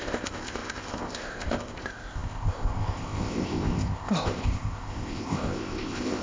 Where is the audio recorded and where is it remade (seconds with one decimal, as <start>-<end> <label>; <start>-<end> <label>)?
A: 0.0-6.2 remade